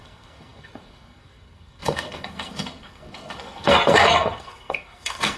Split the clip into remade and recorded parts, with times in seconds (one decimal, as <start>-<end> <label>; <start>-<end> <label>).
0.0-5.4 remade